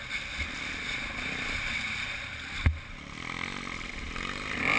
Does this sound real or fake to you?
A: real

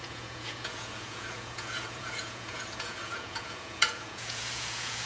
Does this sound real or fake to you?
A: fake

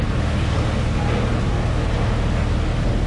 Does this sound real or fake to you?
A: real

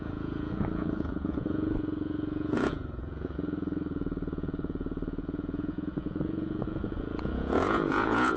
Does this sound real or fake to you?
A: fake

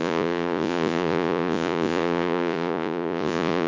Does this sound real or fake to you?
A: fake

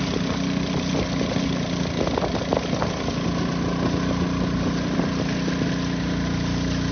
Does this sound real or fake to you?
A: real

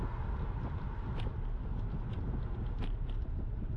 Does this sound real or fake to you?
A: real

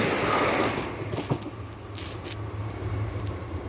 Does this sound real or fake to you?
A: real